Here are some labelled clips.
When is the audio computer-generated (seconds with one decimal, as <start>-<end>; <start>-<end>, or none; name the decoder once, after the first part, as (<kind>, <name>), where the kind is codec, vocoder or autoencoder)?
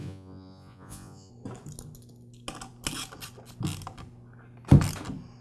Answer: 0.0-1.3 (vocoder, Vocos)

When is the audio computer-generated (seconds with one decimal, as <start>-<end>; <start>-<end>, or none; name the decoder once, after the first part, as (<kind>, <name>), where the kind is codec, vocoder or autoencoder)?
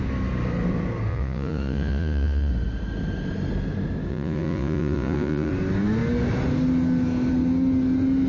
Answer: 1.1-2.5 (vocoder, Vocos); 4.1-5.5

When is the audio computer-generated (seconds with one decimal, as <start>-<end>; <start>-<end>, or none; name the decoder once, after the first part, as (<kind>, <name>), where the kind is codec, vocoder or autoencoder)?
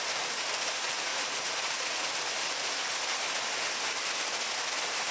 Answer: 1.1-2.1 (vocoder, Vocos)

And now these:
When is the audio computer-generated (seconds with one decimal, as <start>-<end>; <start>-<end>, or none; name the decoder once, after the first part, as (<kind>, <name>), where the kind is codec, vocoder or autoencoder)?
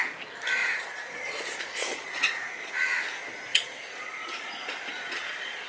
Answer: 0.6-2.7 (vocoder, Vocos); 3.5-5.7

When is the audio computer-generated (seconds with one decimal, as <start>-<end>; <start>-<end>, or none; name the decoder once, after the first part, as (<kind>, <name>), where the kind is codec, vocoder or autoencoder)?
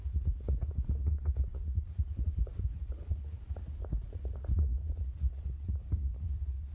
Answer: 0.0-6.7 (vocoder, Vocos)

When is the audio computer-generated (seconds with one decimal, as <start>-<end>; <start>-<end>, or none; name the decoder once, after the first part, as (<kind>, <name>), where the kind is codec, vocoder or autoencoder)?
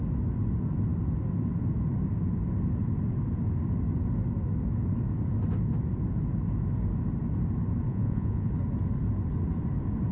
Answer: 7.9-8.5 (vocoder, Vocos)